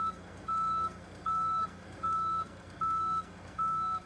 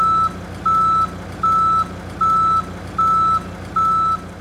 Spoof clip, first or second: first